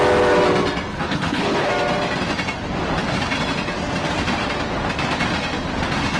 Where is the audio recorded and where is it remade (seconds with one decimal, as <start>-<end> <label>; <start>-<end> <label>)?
0.0-0.9 recorded; 0.9-1.7 remade; 1.7-6.2 recorded